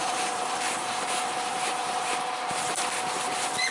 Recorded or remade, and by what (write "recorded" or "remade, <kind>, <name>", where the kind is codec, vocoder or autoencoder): remade, vocoder, BigVGAN v2